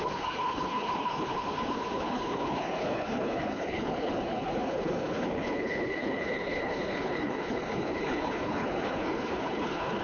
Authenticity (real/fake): fake